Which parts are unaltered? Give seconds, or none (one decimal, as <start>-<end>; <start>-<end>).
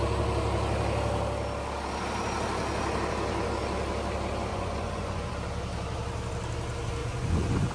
0.0-4.5; 5.3-7.0